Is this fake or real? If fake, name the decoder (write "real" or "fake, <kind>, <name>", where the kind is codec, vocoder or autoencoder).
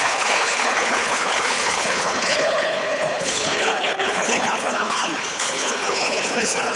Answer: fake, codec, HILCodec